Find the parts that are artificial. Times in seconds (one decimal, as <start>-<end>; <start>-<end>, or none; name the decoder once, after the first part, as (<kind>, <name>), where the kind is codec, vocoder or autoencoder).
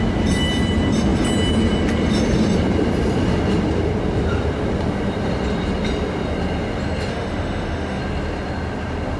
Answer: 7.1-8.0 (autoencoder, DAC-VAE)